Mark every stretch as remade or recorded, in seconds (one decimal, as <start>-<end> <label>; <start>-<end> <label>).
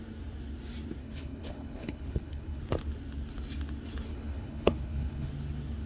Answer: 0.0-1.0 recorded; 1.0-2.6 remade; 2.6-4.1 recorded; 4.1-5.3 remade; 5.3-5.9 recorded